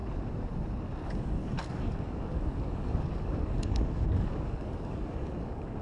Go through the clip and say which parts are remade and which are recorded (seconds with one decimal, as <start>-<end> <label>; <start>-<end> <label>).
0.0-1.1 recorded; 1.1-5.8 remade